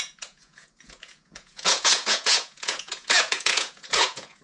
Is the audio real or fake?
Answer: fake